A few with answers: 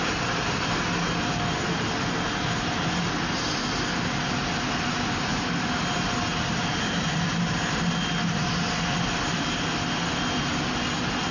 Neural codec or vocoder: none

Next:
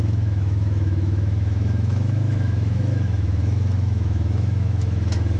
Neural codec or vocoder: autoencoder, DAC-VAE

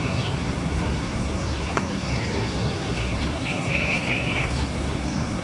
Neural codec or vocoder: codec, SNAC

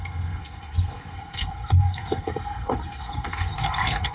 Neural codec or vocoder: codec, SNAC